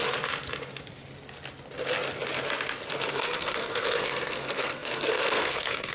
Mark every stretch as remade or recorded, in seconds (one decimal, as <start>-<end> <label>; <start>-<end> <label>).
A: 0.0-3.1 recorded; 3.1-5.9 remade